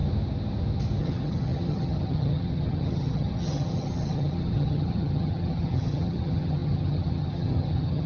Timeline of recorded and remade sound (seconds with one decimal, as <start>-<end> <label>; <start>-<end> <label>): 0.0-1.0 recorded; 1.0-8.1 remade